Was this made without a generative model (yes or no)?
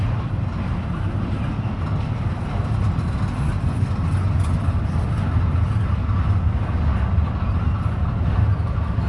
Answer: yes